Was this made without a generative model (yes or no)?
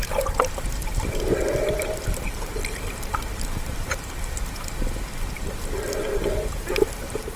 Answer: no